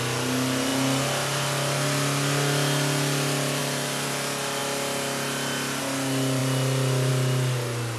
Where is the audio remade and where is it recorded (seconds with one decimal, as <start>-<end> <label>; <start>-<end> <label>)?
0.0-8.0 recorded